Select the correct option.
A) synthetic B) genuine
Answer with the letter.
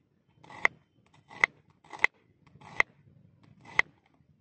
B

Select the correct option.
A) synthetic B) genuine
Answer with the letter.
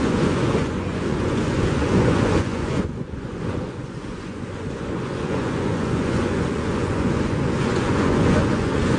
A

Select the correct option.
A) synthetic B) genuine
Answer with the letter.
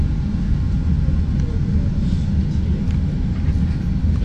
B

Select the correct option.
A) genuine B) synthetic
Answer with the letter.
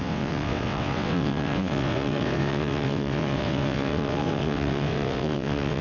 B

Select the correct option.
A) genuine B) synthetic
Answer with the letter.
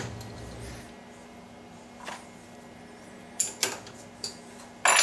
A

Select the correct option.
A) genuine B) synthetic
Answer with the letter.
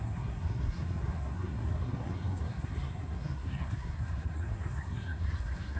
B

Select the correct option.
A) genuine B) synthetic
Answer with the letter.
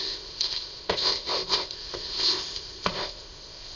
B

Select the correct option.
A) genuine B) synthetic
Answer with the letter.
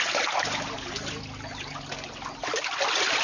A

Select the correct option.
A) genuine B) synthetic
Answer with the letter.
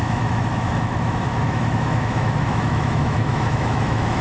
B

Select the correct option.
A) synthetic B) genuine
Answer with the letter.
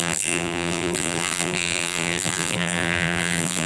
A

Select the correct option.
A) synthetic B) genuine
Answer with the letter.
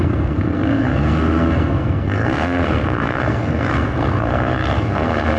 A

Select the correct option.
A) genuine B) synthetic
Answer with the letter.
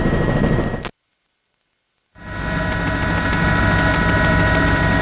A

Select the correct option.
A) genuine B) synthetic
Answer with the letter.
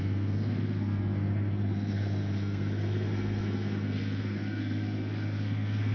B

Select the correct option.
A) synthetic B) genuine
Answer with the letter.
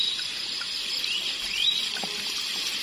B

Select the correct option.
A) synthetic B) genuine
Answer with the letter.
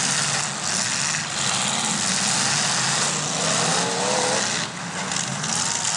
B